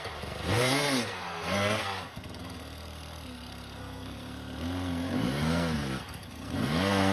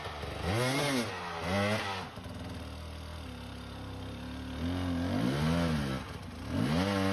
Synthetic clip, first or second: first